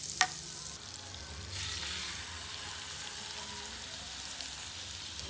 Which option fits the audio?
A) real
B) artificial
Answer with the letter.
A